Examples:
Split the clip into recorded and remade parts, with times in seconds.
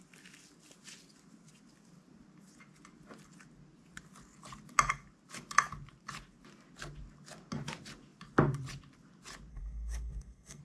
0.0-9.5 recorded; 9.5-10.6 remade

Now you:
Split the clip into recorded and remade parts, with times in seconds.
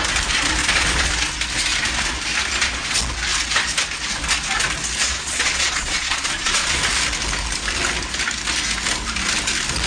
0.0-0.6 recorded; 0.6-1.1 remade; 1.1-5.0 recorded; 5.0-6.8 remade; 6.8-9.9 recorded